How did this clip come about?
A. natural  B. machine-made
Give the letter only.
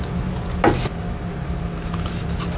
A